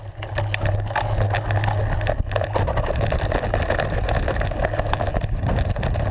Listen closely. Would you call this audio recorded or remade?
recorded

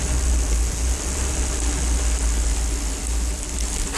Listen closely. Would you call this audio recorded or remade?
recorded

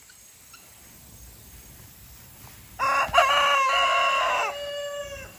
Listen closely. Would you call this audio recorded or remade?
recorded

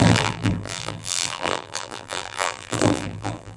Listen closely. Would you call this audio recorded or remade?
remade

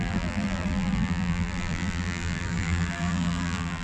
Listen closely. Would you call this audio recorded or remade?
remade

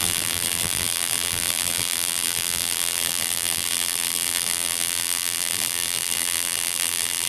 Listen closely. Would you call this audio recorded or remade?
remade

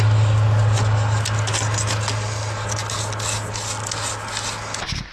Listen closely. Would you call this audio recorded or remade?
recorded